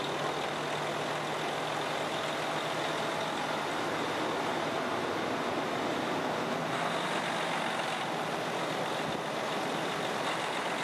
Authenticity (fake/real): real